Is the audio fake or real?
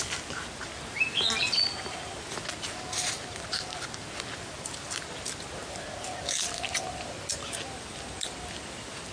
real